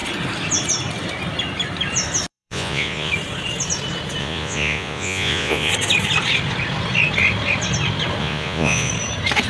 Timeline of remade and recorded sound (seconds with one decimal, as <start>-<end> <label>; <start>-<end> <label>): 0.0-2.3 recorded; 2.3-3.1 remade; 3.1-4.2 recorded; 4.2-5.7 remade; 5.7-8.2 recorded; 8.2-8.9 remade; 8.9-9.5 recorded